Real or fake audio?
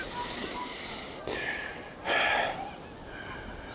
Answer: real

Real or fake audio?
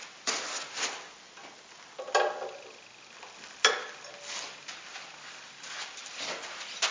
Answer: real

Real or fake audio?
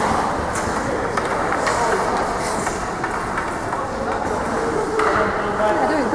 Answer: real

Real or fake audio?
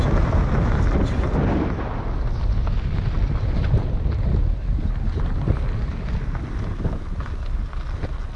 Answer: real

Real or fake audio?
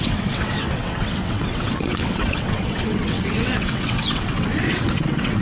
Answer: fake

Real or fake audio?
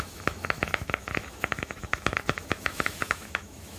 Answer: fake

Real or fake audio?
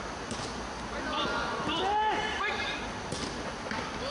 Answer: real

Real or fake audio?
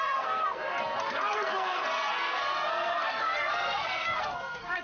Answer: fake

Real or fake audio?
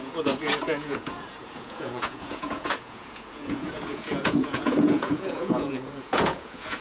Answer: fake